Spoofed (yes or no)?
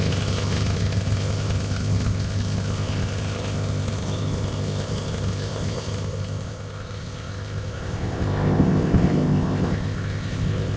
yes